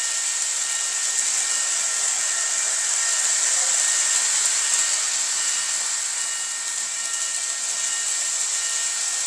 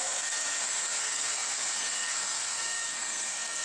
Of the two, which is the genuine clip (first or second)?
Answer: first